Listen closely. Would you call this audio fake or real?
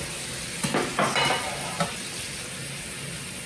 real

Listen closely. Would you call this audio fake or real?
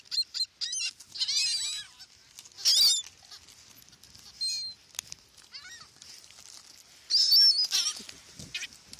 real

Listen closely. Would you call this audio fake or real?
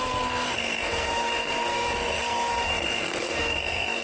fake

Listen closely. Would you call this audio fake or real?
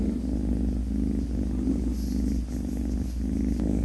real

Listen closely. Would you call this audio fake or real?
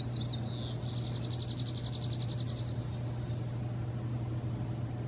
real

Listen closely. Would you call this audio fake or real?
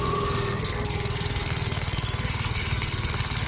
fake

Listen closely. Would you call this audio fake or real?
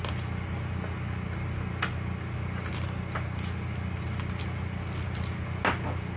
real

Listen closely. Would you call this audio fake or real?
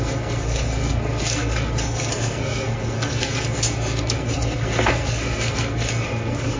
fake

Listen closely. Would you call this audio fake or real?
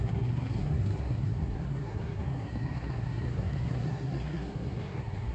fake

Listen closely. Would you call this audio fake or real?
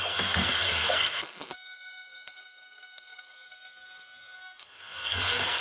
fake